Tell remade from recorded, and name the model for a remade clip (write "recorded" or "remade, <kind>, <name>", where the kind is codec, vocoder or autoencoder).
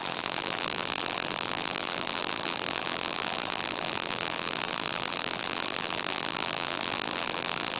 remade, vocoder, BigVGAN v2